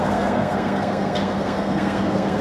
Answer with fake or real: fake